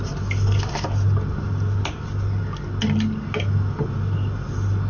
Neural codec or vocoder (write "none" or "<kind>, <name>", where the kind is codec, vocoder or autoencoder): none